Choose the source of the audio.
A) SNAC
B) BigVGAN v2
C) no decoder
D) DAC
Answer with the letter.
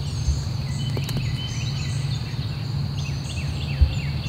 C